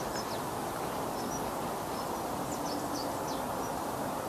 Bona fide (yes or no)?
yes